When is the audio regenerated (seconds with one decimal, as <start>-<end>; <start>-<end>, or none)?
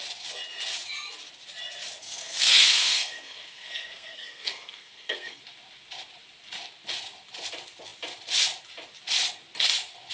2.0-5.4